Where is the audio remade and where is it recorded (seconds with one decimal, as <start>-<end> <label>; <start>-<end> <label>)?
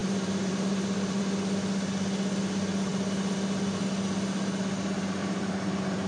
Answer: 0.0-1.2 remade; 1.2-5.2 recorded; 5.2-6.1 remade